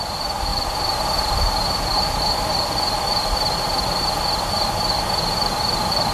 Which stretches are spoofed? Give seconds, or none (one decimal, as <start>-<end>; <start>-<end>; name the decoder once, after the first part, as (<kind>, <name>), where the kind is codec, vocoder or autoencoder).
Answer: none